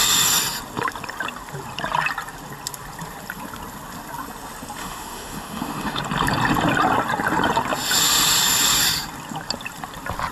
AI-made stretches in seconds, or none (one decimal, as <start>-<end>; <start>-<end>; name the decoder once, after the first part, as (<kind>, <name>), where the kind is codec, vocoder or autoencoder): 4.8-6.0 (autoencoder, DAC-VAE)